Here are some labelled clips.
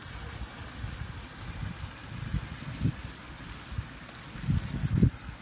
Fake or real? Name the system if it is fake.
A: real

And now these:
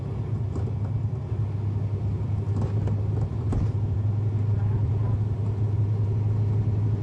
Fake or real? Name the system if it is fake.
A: real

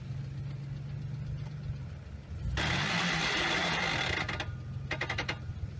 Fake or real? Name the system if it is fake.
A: real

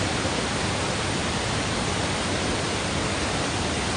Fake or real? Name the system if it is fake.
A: real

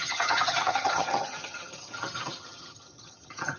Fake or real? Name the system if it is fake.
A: fake, vocoder, HiFi-GAN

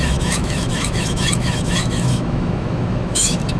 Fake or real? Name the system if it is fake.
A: fake, autoencoder, DAC-VAE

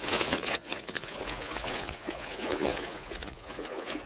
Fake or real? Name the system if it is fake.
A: fake, vocoder, Vocos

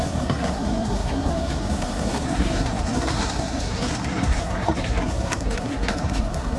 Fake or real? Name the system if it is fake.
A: fake, codec, SNAC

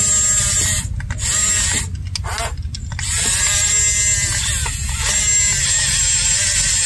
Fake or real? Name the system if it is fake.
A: real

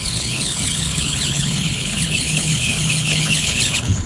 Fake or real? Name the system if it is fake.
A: fake, codec, HILCodec